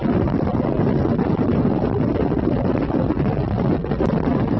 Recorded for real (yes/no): yes